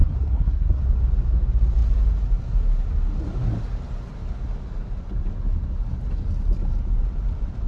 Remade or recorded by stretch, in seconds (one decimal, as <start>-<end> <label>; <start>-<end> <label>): 0.0-0.8 remade; 0.8-7.7 recorded